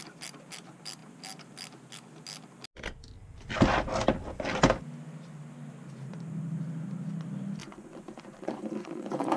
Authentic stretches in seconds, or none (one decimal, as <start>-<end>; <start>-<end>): 0.0-7.6

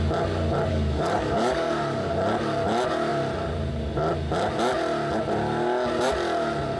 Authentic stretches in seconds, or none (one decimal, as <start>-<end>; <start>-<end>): 0.0-0.7; 2.1-6.8